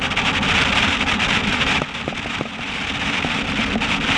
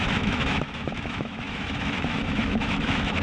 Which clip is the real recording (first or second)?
first